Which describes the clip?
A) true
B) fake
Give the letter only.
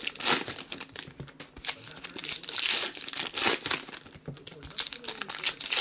A